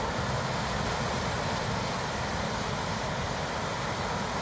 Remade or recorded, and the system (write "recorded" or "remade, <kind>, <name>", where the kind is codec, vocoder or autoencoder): recorded